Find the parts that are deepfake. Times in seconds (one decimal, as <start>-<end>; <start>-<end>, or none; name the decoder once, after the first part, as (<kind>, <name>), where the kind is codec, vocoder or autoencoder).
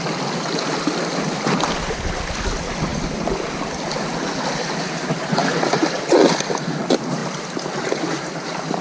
none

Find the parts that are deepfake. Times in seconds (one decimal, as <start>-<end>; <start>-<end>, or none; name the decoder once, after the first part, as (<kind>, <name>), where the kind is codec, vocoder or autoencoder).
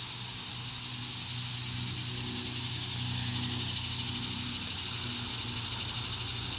none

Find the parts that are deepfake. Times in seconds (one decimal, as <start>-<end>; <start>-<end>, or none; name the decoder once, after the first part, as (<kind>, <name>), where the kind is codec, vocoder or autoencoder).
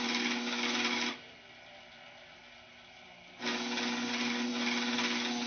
none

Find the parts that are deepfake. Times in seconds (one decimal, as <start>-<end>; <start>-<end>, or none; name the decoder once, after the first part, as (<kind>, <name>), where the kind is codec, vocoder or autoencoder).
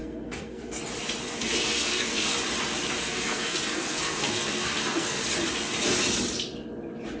0.0-0.8 (codec, SNAC); 1.4-2.3; 3.0-5.2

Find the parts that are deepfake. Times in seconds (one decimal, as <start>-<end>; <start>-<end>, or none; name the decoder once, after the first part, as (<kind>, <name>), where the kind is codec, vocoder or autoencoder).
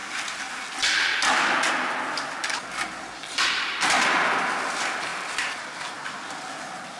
none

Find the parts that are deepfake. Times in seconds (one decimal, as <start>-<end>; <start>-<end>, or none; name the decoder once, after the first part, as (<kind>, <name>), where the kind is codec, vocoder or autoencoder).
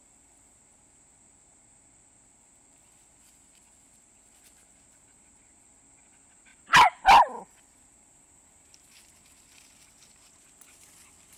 none